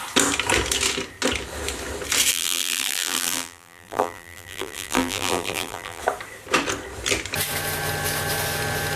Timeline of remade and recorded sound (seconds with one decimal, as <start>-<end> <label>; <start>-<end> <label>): 0.0-2.3 recorded; 2.3-6.0 remade; 6.0-9.0 recorded